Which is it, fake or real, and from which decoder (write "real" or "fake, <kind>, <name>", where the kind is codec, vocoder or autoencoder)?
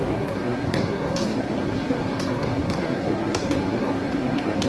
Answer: fake, codec, SNAC